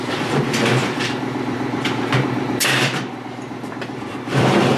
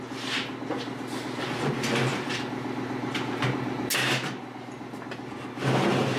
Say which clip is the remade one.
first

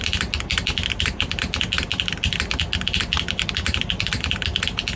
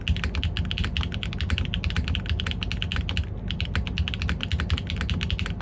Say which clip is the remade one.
first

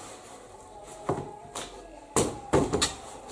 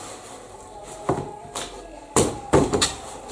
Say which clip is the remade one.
second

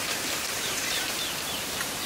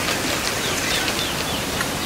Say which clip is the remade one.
first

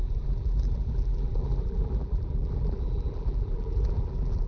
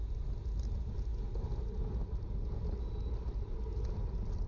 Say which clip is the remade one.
first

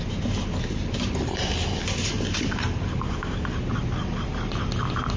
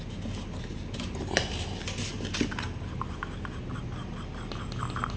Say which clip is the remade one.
first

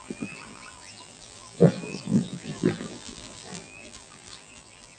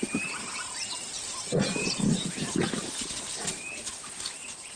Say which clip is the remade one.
first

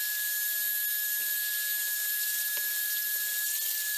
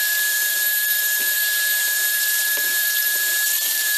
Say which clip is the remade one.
second